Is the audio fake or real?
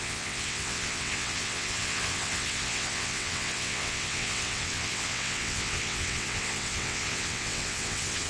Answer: fake